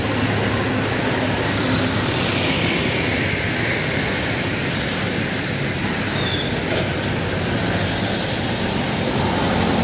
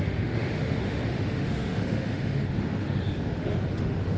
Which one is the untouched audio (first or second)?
first